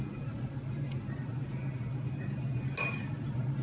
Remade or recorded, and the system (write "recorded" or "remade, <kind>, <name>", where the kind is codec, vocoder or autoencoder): recorded